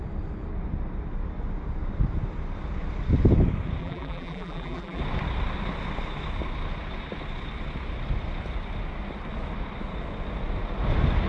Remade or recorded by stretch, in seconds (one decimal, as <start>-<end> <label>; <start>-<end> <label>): 0.0-3.8 recorded; 3.8-5.0 remade; 5.0-11.3 recorded